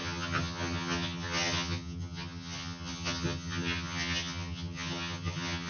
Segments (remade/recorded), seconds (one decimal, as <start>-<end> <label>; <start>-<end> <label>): 0.0-5.7 remade